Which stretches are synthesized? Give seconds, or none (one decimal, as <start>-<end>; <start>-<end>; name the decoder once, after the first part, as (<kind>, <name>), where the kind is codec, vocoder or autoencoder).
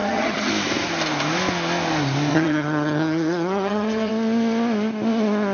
0.0-0.5 (vocoder, HiFi-GAN); 2.3-4.1